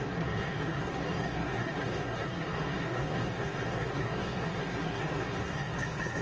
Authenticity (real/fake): fake